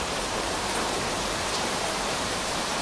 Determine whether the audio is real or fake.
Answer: fake